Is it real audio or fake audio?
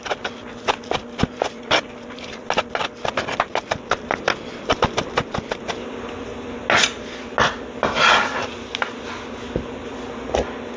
real